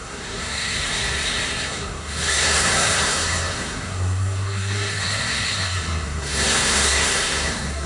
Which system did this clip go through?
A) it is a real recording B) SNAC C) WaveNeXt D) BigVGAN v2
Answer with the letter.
B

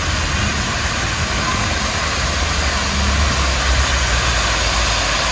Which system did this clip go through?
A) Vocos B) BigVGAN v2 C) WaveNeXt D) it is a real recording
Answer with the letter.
D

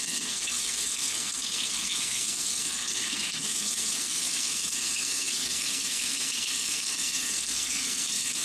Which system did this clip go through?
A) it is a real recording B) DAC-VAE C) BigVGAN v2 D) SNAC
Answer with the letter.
D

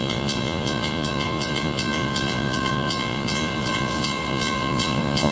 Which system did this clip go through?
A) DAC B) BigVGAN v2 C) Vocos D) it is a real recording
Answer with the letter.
C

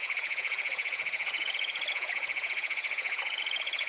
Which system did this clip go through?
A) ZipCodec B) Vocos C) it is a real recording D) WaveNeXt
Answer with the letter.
B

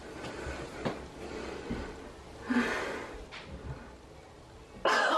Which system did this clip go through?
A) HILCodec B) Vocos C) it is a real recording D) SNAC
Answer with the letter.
C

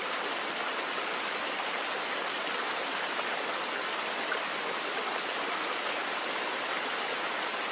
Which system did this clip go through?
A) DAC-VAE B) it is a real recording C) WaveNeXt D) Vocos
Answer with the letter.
B